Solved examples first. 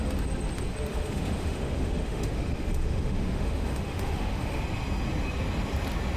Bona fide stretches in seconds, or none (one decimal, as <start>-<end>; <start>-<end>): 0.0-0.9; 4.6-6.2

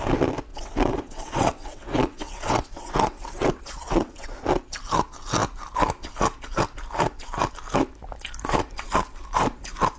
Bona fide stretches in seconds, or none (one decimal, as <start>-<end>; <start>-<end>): 0.0-0.5; 4.4-10.0

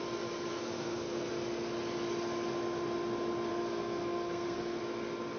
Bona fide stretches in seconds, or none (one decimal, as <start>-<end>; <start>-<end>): 0.0-0.5; 1.3-3.5; 4.8-5.4